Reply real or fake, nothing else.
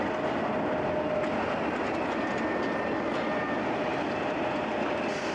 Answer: real